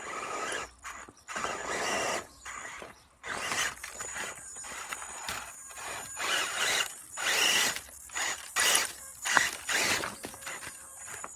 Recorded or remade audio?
remade